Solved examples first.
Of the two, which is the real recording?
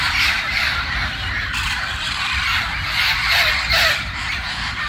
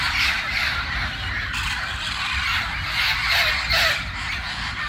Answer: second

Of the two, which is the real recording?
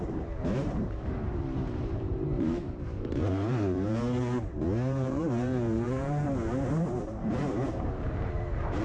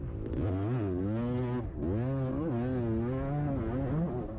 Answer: second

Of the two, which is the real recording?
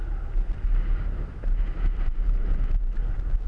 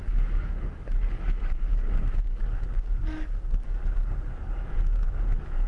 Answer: first